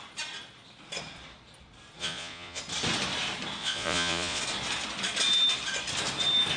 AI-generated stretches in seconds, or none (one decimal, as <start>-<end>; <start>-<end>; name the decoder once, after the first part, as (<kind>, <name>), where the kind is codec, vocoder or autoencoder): 2.0-2.6 (vocoder, Vocos); 3.6-4.4

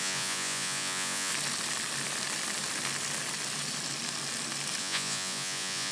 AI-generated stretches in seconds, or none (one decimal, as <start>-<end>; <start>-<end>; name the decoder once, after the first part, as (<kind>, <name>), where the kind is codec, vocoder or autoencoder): 0.0-1.3 (vocoder, Vocos); 4.8-5.9

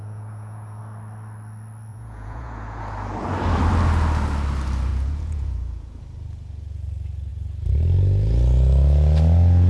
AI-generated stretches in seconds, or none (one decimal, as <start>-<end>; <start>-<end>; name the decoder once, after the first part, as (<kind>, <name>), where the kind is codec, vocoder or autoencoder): 0.0-0.8 (vocoder, Vocos); 1.9-2.8; 4.9-6.0

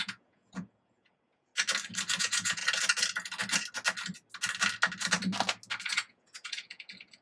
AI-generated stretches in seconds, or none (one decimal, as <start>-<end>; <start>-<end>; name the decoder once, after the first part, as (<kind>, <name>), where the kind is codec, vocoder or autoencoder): 0.0-1.5 (vocoder, Vocos); 2.2-2.6; 5.9-7.2

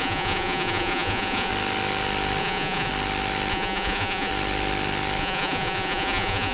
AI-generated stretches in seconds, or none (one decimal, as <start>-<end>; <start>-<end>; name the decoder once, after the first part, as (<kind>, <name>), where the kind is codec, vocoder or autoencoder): 0.0-1.5 (vocoder, Vocos); 2.4-2.9; 3.5-4.3; 5.2-6.5

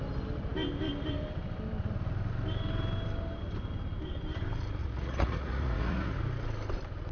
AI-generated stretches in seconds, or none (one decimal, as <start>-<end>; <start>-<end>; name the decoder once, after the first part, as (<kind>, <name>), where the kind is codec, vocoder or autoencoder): 4.8-6.2 (vocoder, Vocos)